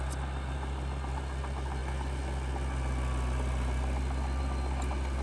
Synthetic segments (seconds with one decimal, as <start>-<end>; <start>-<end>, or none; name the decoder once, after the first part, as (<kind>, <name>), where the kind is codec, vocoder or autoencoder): none